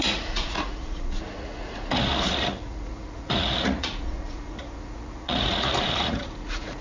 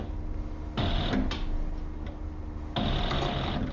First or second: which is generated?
first